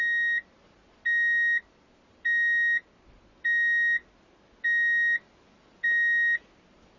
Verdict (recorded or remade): recorded